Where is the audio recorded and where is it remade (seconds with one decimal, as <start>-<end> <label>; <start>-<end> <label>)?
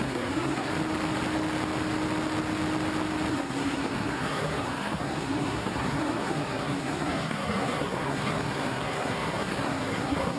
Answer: 0.0-0.7 remade; 0.7-3.3 recorded; 3.3-10.4 remade